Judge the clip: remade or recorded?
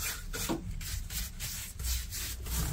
recorded